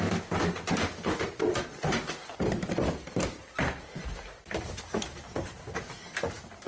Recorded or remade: recorded